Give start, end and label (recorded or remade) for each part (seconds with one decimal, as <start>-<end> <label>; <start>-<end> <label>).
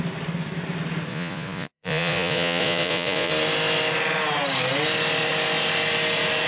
0.0-1.1 recorded; 1.1-3.3 remade; 3.3-6.5 recorded